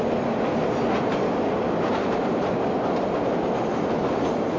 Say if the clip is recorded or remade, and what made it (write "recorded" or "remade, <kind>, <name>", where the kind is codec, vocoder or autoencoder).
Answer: remade, vocoder, BigVGAN v2